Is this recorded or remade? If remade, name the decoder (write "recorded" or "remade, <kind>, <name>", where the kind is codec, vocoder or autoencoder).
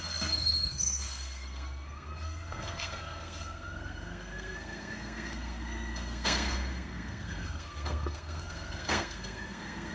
remade, codec, SNAC